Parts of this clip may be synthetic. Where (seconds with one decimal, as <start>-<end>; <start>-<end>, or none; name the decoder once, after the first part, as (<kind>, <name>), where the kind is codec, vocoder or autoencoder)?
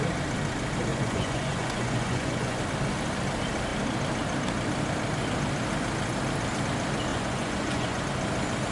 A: 0.9-2.6 (vocoder, Vocos); 7.1-8.0